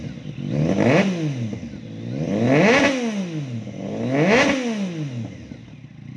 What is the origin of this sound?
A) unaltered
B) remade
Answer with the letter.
A